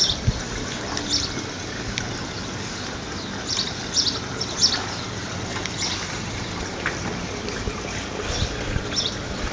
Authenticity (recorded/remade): recorded